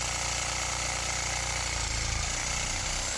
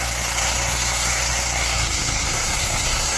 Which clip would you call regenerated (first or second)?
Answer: second